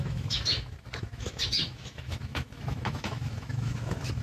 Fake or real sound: fake